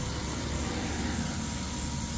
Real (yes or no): yes